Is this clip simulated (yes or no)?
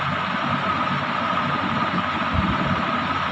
no